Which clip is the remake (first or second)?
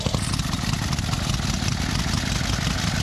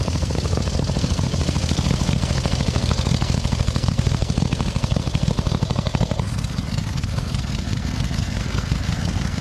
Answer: second